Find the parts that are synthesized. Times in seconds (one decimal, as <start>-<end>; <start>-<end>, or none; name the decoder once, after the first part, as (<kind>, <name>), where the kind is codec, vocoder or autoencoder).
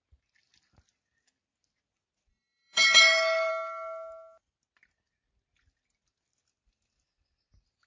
2.3-3.5 (autoencoder, DAC-VAE)